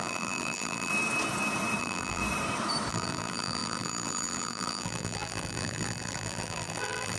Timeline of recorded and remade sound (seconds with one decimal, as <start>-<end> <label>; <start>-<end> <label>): 0.0-0.9 remade; 0.9-1.8 recorded; 1.8-2.2 remade; 2.2-2.9 recorded; 2.9-7.2 remade